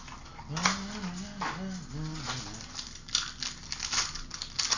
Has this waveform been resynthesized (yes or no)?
no